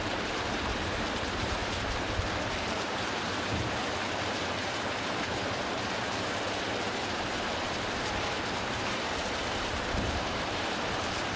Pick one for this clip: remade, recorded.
remade